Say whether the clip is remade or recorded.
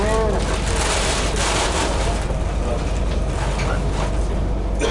recorded